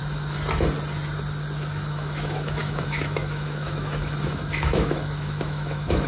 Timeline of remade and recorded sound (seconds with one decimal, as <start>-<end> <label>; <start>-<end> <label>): 0.0-1.9 recorded; 1.9-6.1 remade